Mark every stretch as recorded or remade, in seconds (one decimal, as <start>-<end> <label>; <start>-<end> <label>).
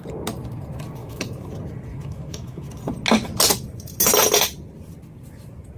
0.0-1.0 recorded; 1.0-1.5 remade; 1.5-1.9 recorded; 1.9-2.7 remade; 2.7-5.8 recorded